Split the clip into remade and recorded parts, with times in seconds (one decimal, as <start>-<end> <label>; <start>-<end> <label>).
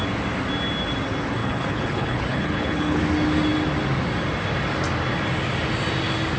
0.0-1.4 recorded; 1.4-3.0 remade; 3.0-6.4 recorded